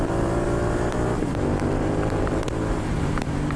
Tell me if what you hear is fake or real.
fake